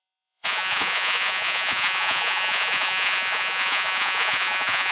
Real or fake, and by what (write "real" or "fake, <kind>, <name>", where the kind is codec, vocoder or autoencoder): fake, vocoder, Vocos